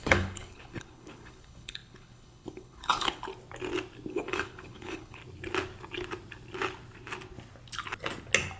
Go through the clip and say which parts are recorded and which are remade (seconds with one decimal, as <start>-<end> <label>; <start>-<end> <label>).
0.0-3.3 remade; 3.3-4.1 recorded; 4.1-5.2 remade; 5.2-8.6 recorded